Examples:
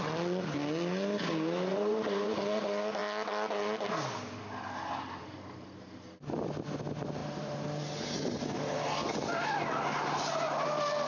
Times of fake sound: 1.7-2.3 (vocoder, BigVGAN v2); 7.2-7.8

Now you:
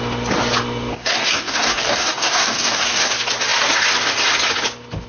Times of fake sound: 0.9-3.1 (codec, DAC)

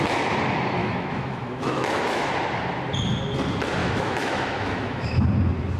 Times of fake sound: 0.8-2.3 (autoencoder, DAC-VAE); 3.8-5.2

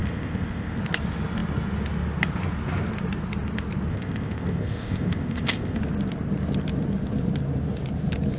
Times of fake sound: 0.0-0.8 (codec, ZipCodec); 3.9-5.8

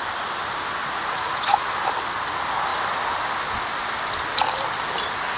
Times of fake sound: 0.8-1.7 (vocoder, Vocos)